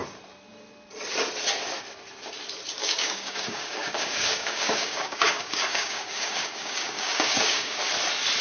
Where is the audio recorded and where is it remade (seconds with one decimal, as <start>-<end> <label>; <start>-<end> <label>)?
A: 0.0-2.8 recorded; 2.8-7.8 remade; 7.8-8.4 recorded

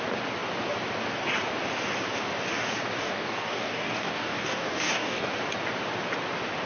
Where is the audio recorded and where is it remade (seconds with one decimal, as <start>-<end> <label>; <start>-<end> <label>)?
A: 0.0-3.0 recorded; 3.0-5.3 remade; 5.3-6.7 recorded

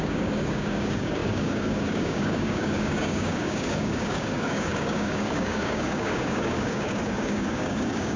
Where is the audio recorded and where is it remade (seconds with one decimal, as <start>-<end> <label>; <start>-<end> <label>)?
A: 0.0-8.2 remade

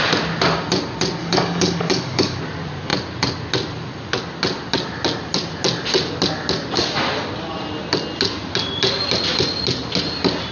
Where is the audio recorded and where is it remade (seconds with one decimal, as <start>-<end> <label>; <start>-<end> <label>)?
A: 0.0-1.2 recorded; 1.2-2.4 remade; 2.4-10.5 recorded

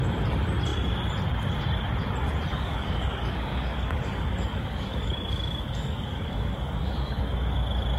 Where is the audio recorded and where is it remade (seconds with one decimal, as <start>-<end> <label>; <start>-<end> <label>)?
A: 0.0-2.5 recorded; 2.5-7.2 remade; 7.2-8.0 recorded

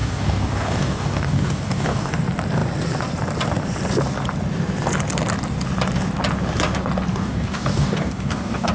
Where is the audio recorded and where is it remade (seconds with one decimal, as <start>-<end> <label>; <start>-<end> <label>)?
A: 0.0-2.1 remade; 2.1-7.1 recorded; 7.1-8.7 remade

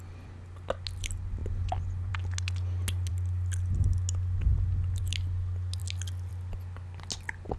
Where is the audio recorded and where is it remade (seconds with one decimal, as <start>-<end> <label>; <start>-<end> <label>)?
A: 0.0-7.6 recorded